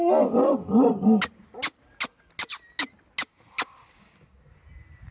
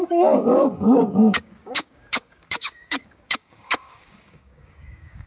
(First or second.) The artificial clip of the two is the second